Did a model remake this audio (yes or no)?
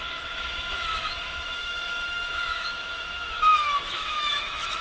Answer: yes